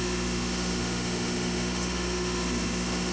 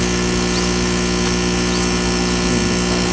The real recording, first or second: second